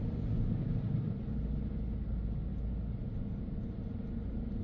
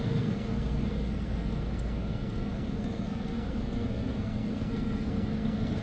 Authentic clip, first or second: first